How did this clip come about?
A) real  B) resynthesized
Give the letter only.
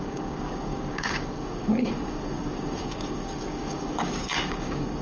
B